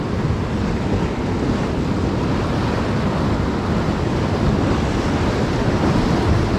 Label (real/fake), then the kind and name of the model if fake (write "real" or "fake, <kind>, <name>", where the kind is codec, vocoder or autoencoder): real